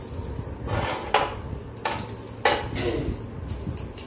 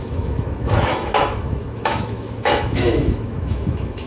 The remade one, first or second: second